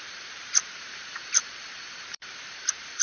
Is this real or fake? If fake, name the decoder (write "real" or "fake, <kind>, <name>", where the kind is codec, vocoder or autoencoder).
fake, vocoder, BigVGAN v2